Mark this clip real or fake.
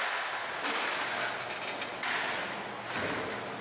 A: real